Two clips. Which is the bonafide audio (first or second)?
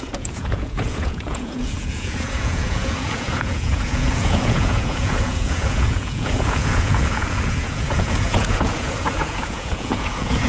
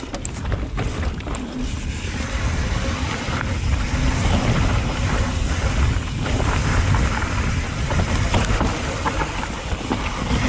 second